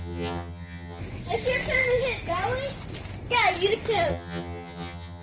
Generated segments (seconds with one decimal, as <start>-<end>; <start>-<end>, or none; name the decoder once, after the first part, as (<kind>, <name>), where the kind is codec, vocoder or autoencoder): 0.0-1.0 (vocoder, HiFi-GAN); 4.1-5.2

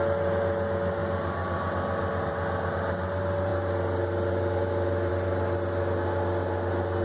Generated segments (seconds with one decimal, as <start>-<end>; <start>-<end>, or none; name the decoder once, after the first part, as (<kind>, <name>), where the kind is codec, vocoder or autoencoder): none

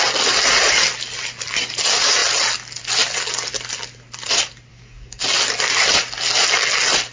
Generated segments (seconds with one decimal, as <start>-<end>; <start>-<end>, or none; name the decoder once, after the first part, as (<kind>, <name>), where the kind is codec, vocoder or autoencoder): 4.7-5.2 (codec, DAC)

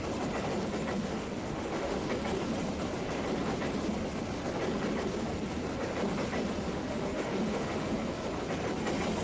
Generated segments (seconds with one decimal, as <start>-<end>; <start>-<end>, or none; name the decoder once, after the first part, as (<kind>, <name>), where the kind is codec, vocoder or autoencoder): 1.0-2.1 (autoencoder, DAC-VAE); 6.7-7.9